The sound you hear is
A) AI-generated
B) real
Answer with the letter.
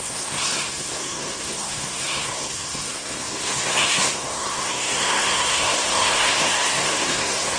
A